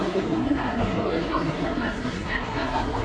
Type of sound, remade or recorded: remade